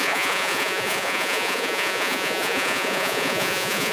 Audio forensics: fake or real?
fake